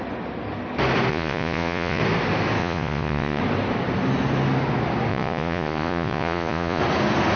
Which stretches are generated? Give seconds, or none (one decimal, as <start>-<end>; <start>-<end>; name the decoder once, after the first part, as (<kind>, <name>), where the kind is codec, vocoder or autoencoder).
1.1-2.0 (vocoder, Vocos); 2.6-3.4; 5.1-6.8